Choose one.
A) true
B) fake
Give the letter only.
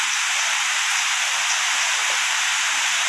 B